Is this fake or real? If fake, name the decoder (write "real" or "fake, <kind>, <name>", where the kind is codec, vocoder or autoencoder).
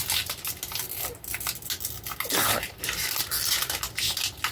real